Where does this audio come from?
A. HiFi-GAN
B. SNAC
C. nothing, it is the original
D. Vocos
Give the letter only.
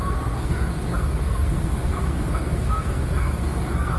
B